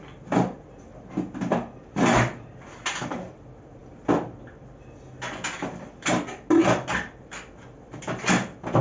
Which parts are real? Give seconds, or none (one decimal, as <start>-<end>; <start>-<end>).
0.0-8.8